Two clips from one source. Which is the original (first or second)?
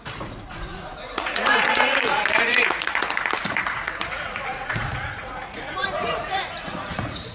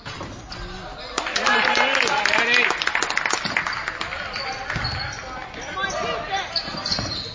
second